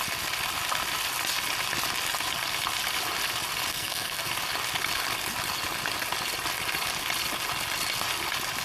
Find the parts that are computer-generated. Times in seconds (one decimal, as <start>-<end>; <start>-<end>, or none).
3.7-4.3